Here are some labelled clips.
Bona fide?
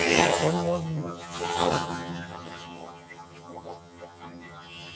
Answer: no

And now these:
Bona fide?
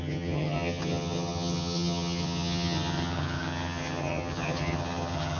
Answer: no